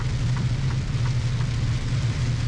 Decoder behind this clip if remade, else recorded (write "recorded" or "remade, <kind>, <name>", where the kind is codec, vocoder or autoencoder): recorded